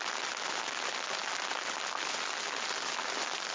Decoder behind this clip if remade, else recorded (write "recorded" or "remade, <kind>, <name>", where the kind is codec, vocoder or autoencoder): recorded